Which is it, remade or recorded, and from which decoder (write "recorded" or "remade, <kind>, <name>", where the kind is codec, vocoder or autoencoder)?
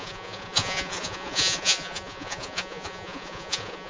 remade, vocoder, Vocos